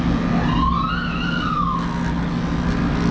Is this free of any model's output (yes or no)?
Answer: yes